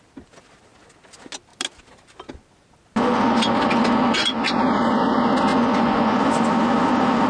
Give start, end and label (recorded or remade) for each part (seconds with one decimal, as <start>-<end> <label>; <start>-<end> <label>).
0.0-5.5 recorded; 5.5-6.2 remade; 6.2-7.3 recorded

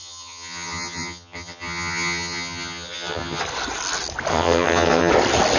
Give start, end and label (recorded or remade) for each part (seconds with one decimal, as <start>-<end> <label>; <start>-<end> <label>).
0.0-3.4 remade; 3.4-4.3 recorded; 4.3-5.1 remade; 5.1-5.6 recorded

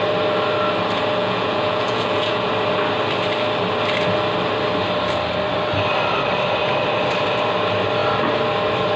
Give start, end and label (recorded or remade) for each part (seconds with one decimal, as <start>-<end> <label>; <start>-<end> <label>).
0.0-1.2 recorded; 1.2-2.5 remade; 2.5-9.0 recorded

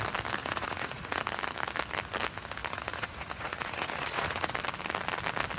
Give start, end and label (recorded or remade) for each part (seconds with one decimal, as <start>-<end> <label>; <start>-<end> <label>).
0.0-0.4 recorded; 0.4-1.2 remade; 1.2-2.6 recorded; 2.6-4.5 remade; 4.5-5.6 recorded

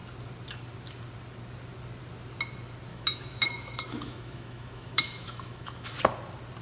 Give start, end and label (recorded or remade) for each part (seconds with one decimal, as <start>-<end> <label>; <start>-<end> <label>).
0.0-2.9 recorded; 2.9-5.9 remade; 5.9-6.6 recorded

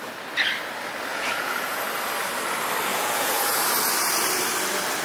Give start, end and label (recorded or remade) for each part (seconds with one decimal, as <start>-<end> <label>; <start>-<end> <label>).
0.0-1.1 recorded; 1.1-1.8 remade; 1.8-2.9 recorded; 2.9-3.6 remade; 3.6-5.0 recorded

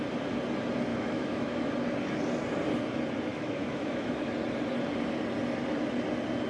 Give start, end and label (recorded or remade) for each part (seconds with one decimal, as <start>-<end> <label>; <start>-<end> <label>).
0.0-0.9 recorded; 0.9-1.7 remade; 1.7-3.3 recorded; 3.3-4.3 remade; 4.3-6.5 recorded

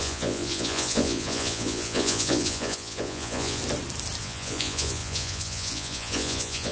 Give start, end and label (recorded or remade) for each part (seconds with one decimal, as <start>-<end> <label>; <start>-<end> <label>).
0.0-3.6 remade; 3.6-4.2 recorded; 4.2-6.7 remade